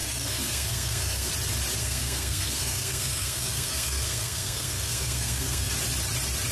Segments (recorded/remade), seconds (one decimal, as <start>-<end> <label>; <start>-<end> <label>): 0.0-1.3 remade; 1.3-1.8 recorded; 1.8-5.7 remade; 5.7-6.5 recorded